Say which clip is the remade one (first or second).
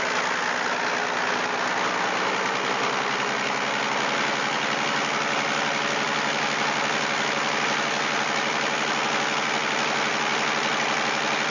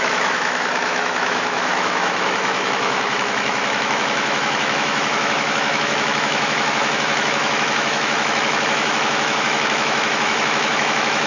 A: second